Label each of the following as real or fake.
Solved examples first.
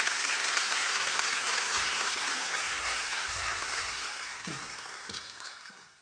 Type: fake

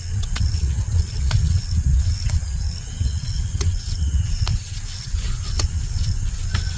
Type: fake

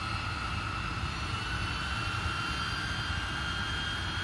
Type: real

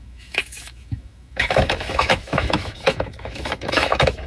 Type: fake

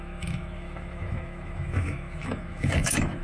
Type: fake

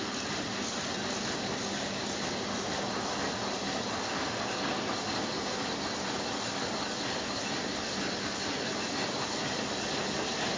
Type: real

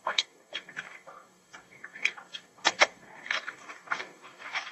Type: fake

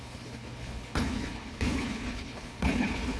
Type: fake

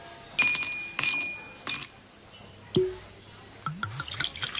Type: real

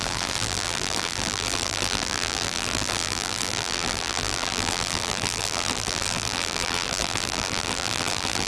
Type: fake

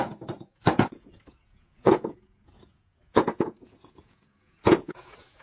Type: fake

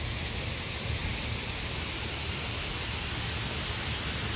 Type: real